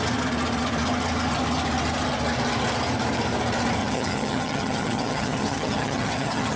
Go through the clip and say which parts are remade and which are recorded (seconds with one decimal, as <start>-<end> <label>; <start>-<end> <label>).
0.0-3.8 recorded; 3.8-6.6 remade